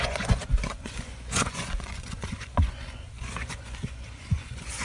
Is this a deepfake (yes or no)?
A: yes